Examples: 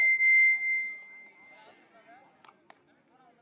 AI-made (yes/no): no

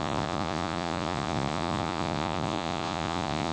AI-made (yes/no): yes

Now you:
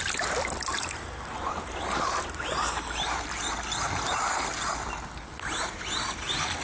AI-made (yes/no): no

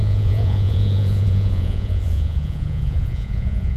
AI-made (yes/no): yes